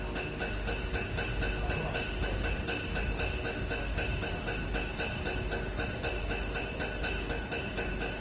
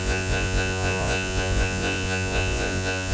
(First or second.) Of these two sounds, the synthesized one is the second